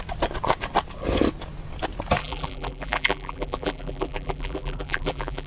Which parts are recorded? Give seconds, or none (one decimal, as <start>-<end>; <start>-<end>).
0.0-2.2